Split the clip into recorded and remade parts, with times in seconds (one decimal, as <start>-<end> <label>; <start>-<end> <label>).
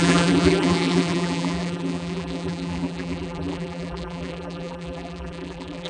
0.0-5.9 remade